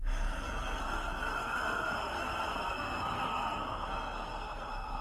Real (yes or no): no